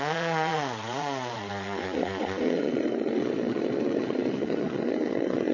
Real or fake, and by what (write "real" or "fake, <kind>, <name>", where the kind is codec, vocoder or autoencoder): fake, vocoder, Vocos